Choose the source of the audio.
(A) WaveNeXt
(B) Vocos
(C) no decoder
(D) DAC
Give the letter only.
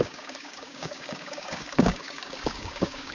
D